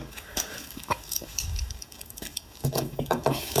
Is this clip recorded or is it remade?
remade